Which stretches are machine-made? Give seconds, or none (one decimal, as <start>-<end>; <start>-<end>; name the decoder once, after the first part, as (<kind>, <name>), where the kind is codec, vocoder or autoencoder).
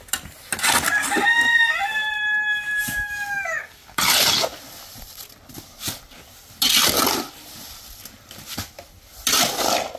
2.8-4.0 (codec, DAC)